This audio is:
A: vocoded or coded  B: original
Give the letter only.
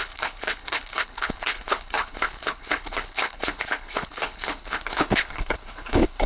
A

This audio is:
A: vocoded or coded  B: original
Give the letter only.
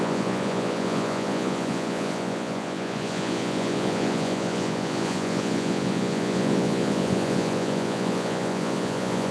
A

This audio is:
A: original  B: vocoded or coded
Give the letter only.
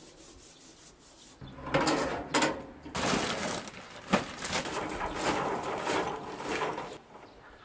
A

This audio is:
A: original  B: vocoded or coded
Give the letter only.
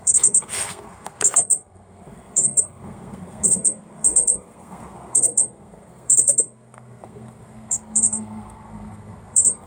B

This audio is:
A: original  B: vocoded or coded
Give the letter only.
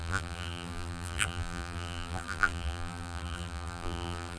B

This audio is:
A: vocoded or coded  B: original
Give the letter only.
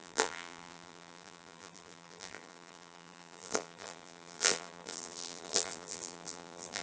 A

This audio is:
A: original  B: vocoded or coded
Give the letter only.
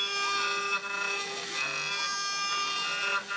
A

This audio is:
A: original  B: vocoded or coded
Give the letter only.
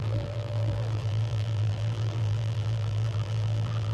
B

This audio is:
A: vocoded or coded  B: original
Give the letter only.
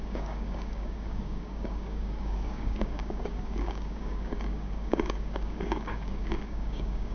A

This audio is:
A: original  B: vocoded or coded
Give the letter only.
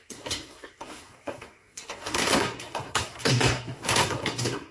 B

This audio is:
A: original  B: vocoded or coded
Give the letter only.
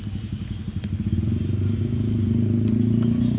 A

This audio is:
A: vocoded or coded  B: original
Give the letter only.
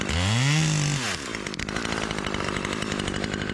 B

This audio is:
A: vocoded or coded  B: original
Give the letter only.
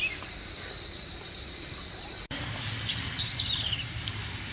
B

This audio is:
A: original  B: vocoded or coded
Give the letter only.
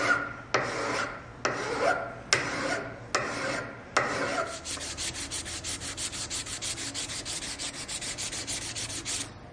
A